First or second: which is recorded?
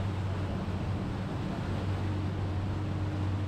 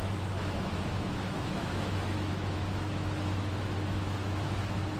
first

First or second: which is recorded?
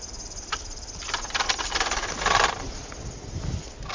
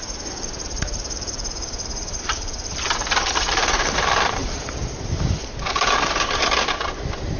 first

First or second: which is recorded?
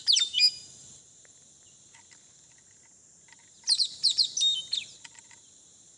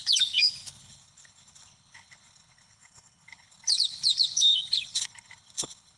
first